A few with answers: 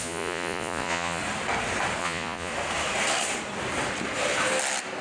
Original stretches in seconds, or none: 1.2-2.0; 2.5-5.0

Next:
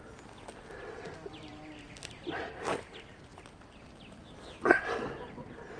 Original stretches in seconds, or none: 0.0-5.8

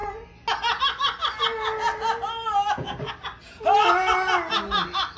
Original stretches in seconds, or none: 0.0-5.2

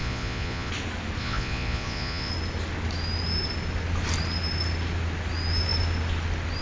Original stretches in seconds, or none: 0.7-1.2; 2.3-6.6